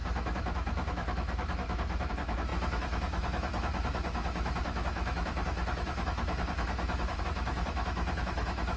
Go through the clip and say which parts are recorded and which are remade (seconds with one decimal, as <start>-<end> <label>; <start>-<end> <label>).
0.0-8.8 remade